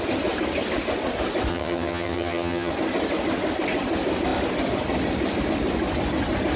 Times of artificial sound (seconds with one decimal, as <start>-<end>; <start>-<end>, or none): 1.5-2.7